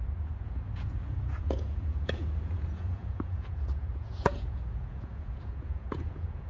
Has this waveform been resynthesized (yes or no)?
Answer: yes